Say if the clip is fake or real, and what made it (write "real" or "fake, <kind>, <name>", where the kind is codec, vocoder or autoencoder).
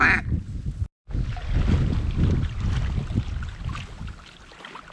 real